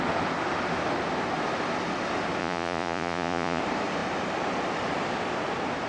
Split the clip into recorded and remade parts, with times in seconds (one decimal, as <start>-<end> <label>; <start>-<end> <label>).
0.0-2.4 recorded; 2.4-3.6 remade; 3.6-5.9 recorded

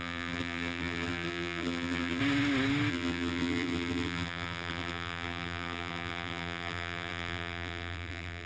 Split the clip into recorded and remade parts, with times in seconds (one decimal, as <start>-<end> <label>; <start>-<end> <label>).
0.0-2.2 remade; 2.2-2.9 recorded; 2.9-8.5 remade

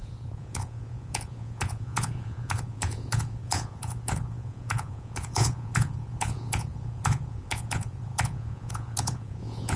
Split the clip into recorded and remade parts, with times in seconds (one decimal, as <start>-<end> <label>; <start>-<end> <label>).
0.0-9.8 remade

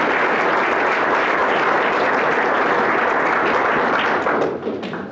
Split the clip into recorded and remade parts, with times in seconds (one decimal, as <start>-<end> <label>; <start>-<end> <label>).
0.0-5.1 recorded

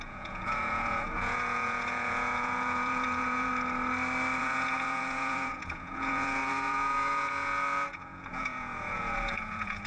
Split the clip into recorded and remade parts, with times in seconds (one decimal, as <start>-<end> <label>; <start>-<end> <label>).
0.0-3.5 remade; 3.5-4.4 recorded; 4.4-9.9 remade

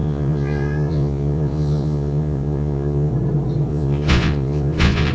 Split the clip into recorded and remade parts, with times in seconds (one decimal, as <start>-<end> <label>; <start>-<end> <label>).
0.0-3.1 remade; 3.1-3.7 recorded; 3.7-5.1 remade

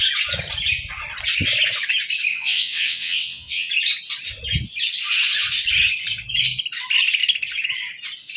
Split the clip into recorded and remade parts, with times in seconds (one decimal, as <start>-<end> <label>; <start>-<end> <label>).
0.0-2.3 recorded; 2.3-3.7 remade; 3.7-8.4 recorded